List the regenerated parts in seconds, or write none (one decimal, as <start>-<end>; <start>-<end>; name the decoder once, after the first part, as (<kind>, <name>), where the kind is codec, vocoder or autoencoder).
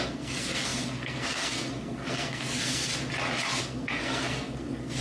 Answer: 0.0-2.9 (codec, SNAC); 3.6-5.0